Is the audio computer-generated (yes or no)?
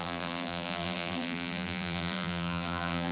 yes